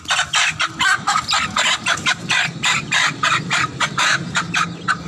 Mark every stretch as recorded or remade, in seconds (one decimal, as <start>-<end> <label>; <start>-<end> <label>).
0.0-2.0 recorded; 2.0-5.1 remade